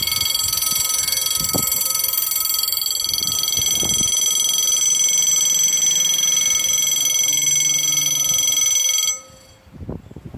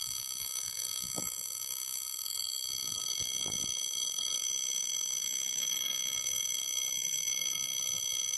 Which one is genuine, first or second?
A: first